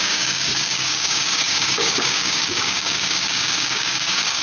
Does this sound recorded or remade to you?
remade